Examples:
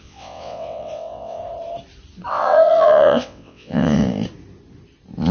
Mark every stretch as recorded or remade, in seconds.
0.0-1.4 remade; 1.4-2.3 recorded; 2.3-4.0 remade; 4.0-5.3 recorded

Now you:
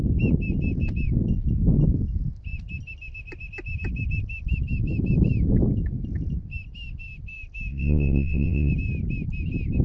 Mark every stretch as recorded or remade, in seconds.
0.0-7.7 recorded; 7.7-8.7 remade; 8.7-9.8 recorded

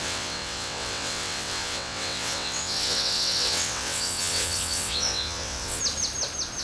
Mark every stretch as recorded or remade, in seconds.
0.0-5.8 remade; 5.8-6.6 recorded

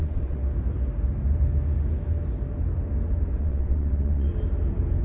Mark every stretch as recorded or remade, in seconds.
0.0-0.4 remade; 0.4-3.4 recorded; 3.4-4.3 remade; 4.3-5.0 recorded